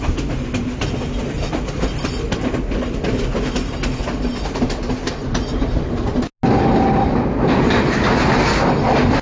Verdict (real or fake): real